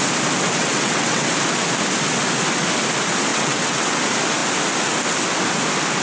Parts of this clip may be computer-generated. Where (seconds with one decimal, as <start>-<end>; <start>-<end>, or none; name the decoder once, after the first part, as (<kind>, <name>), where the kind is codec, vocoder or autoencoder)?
0.6-1.3 (vocoder, WaveNeXt); 3.3-4.0